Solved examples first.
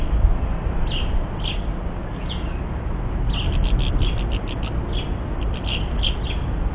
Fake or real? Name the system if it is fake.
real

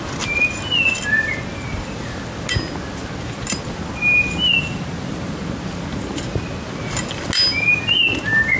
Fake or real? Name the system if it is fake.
real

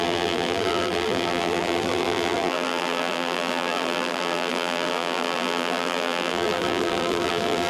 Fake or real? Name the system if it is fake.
fake, vocoder, BigVGAN v2